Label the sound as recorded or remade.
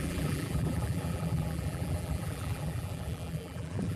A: remade